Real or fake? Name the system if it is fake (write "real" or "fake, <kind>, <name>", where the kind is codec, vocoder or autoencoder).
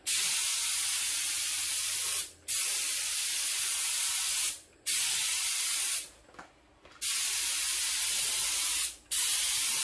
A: real